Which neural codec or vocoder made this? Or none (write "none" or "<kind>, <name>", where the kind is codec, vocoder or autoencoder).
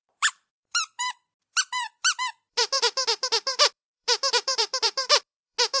vocoder, BigVGAN v2